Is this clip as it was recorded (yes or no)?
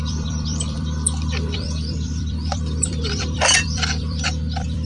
no